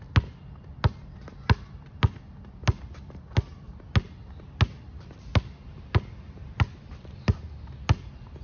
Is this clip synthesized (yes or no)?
no